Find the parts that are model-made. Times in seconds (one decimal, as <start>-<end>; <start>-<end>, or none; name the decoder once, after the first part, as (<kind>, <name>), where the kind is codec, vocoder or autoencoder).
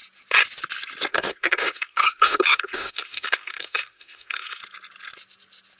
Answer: 1.1-4.6 (codec, SNAC)